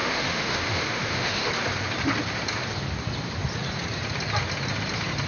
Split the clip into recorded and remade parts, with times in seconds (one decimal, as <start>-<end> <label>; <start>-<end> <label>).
0.0-1.5 remade; 1.5-5.3 recorded